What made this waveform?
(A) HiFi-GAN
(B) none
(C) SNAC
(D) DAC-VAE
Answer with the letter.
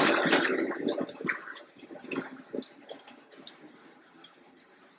B